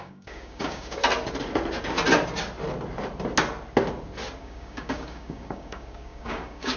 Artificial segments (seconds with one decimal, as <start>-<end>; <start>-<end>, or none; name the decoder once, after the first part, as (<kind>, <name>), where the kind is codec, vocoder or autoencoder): 0.0-1.0 (codec, DAC); 4.4-6.8